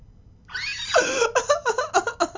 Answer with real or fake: real